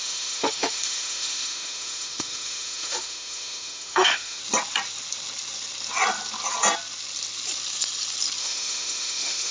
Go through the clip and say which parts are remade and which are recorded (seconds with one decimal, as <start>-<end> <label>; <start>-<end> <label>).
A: 0.0-4.4 remade; 4.4-8.4 recorded; 8.4-9.5 remade